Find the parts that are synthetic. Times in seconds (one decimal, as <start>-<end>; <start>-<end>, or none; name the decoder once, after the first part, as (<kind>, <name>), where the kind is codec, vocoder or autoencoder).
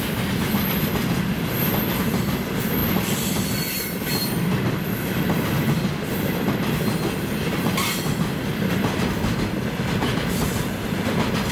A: 0.0-11.5 (vocoder, BigVGAN v2)